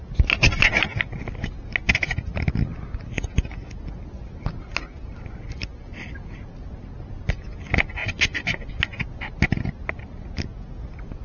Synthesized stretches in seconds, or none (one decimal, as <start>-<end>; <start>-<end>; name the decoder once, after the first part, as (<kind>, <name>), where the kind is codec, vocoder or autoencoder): none